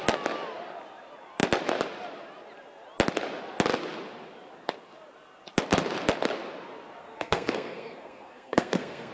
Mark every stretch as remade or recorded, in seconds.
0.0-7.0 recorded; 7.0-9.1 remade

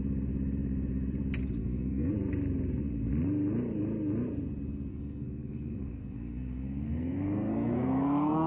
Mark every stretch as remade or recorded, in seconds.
0.0-1.6 recorded; 1.6-2.1 remade; 2.1-4.9 recorded; 4.9-8.5 remade